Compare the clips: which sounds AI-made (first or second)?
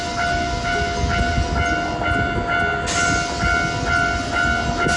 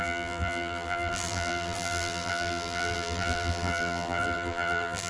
second